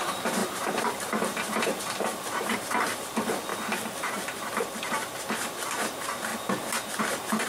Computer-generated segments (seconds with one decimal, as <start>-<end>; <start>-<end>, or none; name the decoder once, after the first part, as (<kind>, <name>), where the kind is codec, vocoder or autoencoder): 0.0-3.5 (vocoder, BigVGAN v2); 4.5-6.3; 7.0-7.5